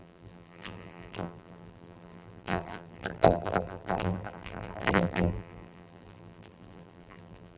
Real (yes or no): no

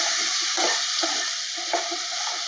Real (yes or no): no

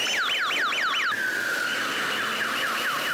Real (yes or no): yes